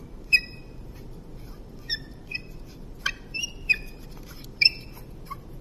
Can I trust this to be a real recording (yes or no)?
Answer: no